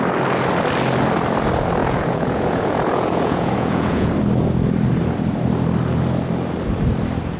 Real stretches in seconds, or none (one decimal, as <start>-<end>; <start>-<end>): 0.0-1.8; 4.1-7.4